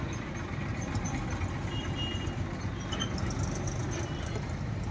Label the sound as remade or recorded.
recorded